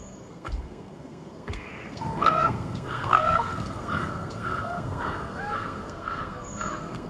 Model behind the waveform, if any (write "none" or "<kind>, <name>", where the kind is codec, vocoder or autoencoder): codec, SNAC